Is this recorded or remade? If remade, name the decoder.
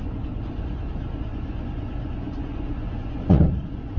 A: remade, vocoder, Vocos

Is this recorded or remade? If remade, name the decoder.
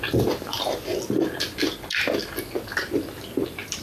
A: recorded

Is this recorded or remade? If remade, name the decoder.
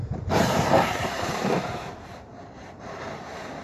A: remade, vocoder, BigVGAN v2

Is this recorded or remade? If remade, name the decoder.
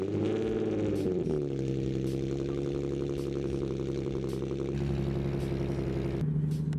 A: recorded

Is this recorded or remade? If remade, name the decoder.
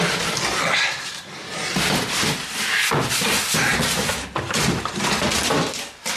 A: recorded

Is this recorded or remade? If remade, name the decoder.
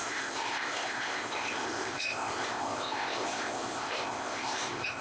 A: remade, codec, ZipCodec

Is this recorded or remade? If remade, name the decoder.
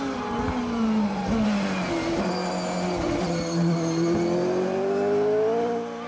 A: recorded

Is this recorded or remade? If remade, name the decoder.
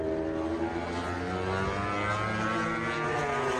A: recorded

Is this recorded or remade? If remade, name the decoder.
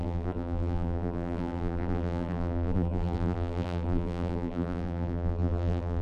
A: remade, vocoder, BigVGAN v2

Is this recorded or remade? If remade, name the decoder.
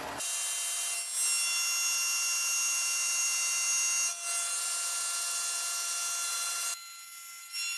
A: recorded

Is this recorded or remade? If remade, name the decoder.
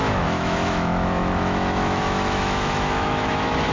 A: remade, autoencoder, DAC-VAE